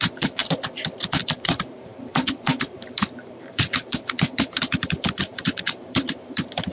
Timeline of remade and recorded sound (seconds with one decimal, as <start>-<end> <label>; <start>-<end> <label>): 0.0-0.4 remade; 0.4-1.2 recorded; 1.2-6.7 remade